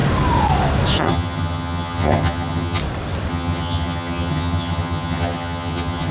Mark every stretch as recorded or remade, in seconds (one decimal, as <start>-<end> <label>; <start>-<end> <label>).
0.0-1.0 recorded; 1.0-2.8 remade; 2.8-3.3 recorded; 3.3-6.1 remade